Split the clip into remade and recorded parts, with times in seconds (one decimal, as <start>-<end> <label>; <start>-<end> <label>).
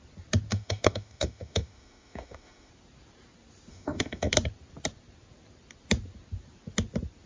0.0-0.5 recorded; 0.5-2.7 remade; 2.7-3.7 recorded; 3.7-4.3 remade; 4.3-7.3 recorded